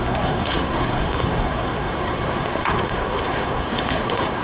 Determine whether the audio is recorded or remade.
remade